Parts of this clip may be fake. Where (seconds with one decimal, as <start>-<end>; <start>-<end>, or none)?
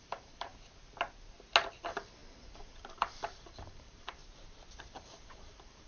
0.0-0.5; 1.7-4.2; 4.8-5.9